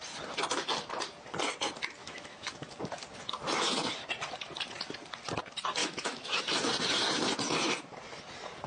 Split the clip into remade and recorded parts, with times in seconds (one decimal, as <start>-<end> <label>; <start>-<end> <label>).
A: 0.0-2.0 recorded; 2.0-2.7 remade; 2.7-5.8 recorded; 5.8-6.4 remade; 6.4-8.7 recorded